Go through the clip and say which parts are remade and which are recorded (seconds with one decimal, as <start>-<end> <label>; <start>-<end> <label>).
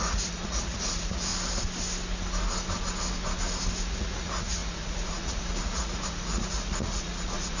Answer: 0.0-1.3 remade; 1.3-3.9 recorded; 3.9-7.6 remade